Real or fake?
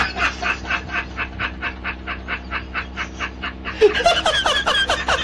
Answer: real